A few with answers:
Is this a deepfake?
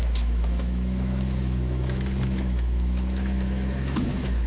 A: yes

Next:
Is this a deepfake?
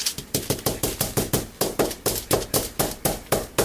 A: no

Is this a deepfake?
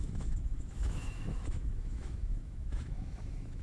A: yes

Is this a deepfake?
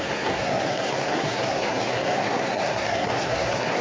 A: yes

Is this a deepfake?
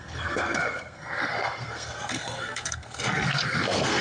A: yes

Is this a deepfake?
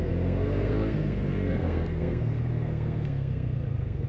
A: yes